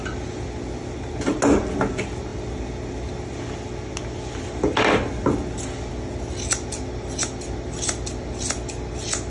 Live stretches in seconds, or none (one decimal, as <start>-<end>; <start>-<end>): 0.0-9.3